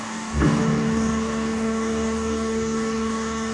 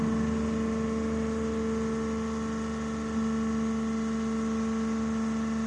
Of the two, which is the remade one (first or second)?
first